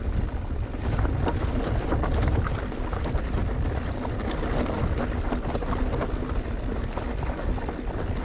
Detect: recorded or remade recorded